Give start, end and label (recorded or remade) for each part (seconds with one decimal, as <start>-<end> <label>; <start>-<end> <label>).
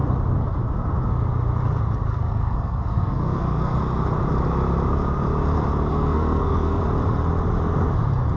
0.0-2.1 recorded; 2.1-3.8 remade; 3.8-5.9 recorded; 5.9-6.8 remade; 6.8-8.4 recorded